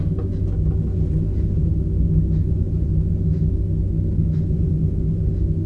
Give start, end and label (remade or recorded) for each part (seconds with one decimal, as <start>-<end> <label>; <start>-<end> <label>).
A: 0.0-0.9 recorded; 0.9-1.7 remade; 1.7-2.4 recorded; 2.4-2.9 remade; 2.9-4.2 recorded; 4.2-5.3 remade; 5.3-5.7 recorded